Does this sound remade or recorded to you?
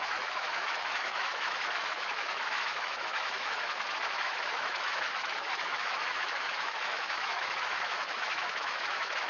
remade